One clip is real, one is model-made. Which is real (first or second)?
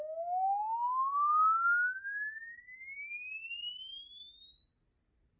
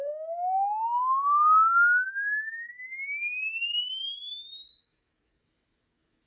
first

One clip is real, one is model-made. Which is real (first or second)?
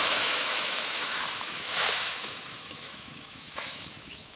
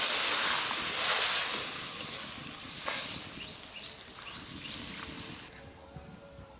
second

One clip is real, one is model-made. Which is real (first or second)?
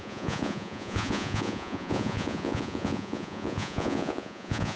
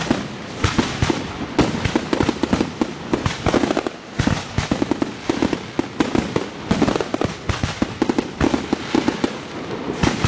second